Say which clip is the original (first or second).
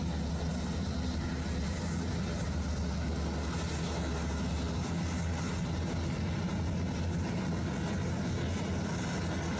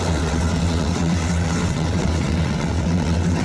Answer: first